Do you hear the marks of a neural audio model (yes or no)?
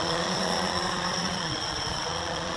yes